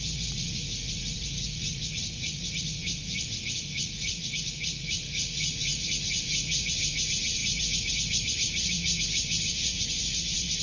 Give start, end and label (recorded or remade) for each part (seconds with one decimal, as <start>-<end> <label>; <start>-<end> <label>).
0.0-10.6 remade